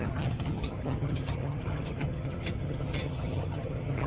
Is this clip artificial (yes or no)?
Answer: yes